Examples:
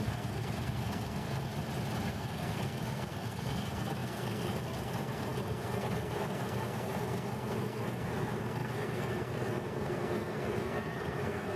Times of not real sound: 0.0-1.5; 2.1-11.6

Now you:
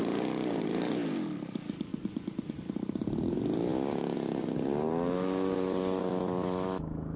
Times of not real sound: 1.9-2.6

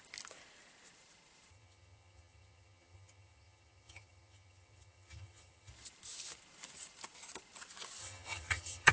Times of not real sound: 1.5-5.7; 8.0-8.9

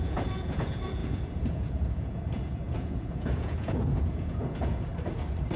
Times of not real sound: 0.0-4.9

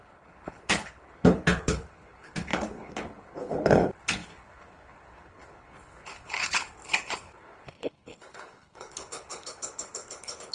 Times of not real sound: 0.0-10.5